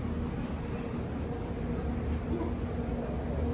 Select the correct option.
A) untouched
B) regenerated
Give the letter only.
A